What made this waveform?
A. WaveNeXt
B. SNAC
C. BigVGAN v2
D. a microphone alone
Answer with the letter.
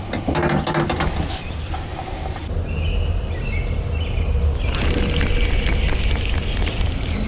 D